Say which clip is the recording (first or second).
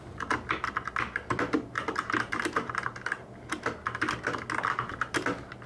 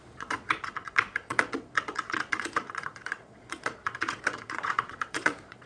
first